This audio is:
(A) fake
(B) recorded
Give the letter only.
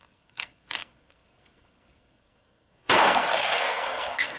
A